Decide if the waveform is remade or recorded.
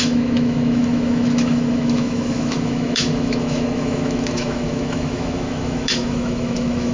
remade